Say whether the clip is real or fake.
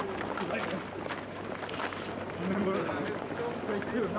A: real